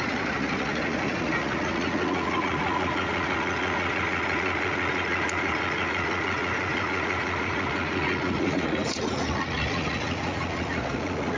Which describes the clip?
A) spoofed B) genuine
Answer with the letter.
A